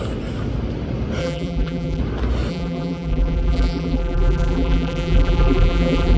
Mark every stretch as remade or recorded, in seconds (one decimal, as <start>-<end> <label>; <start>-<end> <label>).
0.0-1.2 recorded; 1.2-2.0 remade; 2.0-2.5 recorded; 2.5-6.2 remade